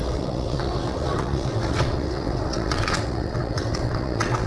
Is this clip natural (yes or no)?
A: no